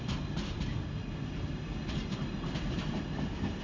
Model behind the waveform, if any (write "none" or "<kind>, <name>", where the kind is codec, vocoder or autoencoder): none